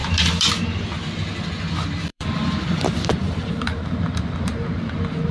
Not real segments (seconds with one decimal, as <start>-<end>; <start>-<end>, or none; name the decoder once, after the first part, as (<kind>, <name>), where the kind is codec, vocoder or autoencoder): 0.0-0.5 (vocoder, BigVGAN v2); 2.1-5.3